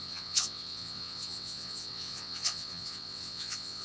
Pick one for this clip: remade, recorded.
remade